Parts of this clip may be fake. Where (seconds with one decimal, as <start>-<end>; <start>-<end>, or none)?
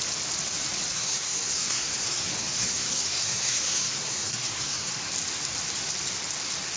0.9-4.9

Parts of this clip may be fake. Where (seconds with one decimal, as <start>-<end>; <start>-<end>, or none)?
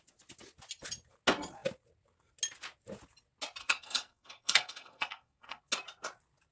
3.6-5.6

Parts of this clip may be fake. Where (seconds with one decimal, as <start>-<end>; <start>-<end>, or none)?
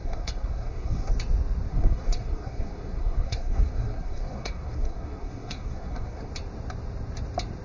0.0-1.1; 1.7-6.3